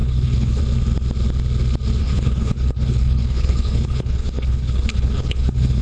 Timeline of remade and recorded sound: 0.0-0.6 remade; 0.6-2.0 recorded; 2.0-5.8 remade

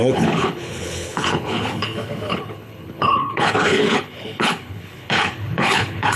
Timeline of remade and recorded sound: 0.0-6.2 remade

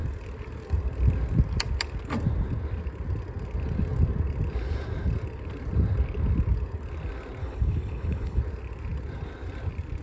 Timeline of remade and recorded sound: 0.0-7.4 recorded; 7.4-8.4 remade; 8.4-10.0 recorded

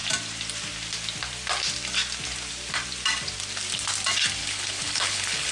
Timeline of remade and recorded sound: 0.0-4.4 recorded; 4.4-5.5 remade